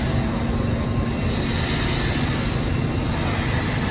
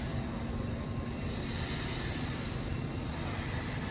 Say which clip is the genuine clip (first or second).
first